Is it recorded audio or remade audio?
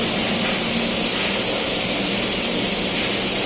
recorded